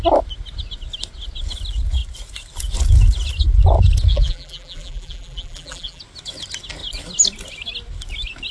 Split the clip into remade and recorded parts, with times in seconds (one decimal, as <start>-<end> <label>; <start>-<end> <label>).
0.0-4.1 recorded; 4.1-6.0 remade; 6.0-8.5 recorded